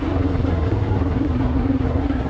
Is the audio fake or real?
fake